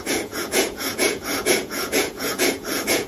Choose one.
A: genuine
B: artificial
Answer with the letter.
B